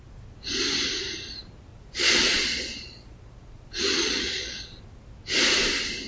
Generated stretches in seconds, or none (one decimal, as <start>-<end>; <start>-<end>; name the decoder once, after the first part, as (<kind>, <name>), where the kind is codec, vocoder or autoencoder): 1.7-4.8 (vocoder, Vocos)